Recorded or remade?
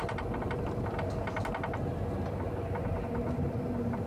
recorded